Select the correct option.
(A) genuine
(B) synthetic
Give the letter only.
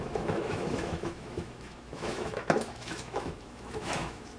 B